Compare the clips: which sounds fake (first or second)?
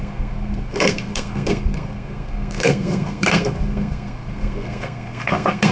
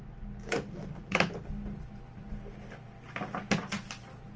first